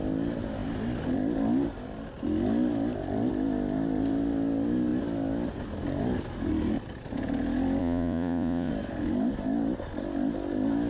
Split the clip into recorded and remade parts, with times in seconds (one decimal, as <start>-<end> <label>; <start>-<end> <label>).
0.0-7.8 recorded; 7.8-8.7 remade; 8.7-10.9 recorded